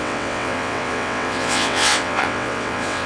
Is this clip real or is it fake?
fake